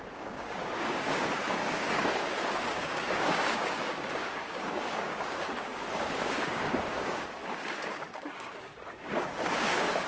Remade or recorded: remade